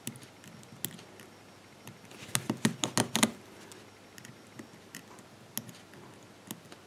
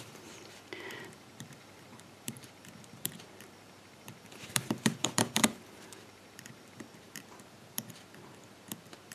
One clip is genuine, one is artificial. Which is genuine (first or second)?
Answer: first